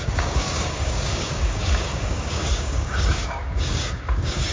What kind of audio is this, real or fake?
fake